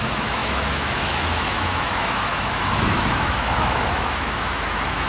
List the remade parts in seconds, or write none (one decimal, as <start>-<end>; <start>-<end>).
0.0-5.1